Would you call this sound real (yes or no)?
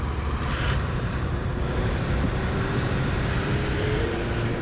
no